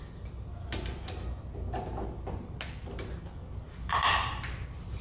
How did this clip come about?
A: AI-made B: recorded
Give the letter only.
B